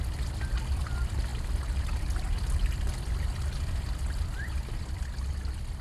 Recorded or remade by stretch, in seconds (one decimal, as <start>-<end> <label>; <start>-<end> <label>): 0.0-5.8 recorded